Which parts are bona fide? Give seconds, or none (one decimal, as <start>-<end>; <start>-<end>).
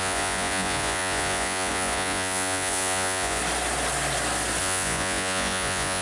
3.4-4.6